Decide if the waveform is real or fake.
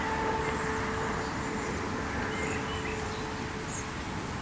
real